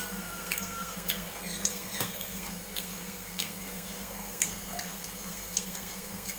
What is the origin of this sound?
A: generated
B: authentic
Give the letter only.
A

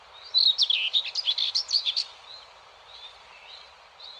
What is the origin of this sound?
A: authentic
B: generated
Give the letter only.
B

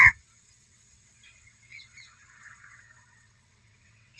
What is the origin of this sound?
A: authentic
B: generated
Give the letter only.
B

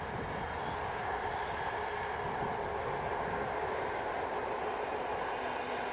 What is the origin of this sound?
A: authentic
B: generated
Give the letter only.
A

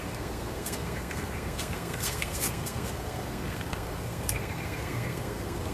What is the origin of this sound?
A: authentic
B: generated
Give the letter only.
B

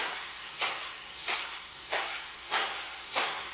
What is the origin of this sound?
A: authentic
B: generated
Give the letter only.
B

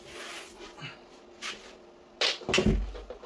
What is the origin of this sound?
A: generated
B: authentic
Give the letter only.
B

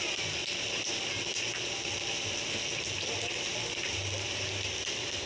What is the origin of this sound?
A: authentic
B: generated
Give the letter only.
A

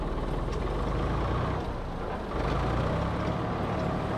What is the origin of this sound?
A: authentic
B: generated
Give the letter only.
A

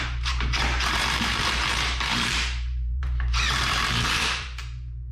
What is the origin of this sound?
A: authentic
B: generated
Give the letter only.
B